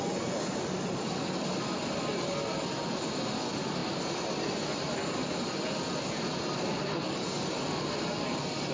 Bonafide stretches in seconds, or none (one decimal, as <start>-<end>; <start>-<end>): 0.0-8.7